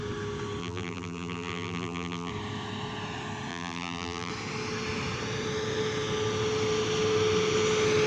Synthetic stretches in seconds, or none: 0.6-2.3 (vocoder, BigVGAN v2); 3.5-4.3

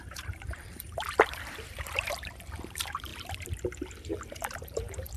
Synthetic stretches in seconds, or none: 0.0-3.1 (vocoder, BigVGAN v2); 4.0-5.2

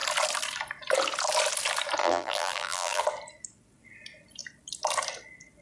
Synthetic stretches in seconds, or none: 2.0-3.0 (vocoder, BigVGAN v2)